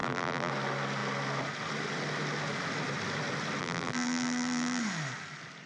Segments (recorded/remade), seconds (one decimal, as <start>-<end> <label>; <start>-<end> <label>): 0.0-0.5 remade; 0.5-3.6 recorded; 3.6-4.8 remade; 4.8-5.7 recorded